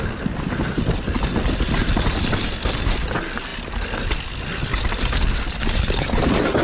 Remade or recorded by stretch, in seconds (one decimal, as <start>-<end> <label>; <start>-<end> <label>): 0.0-6.6 recorded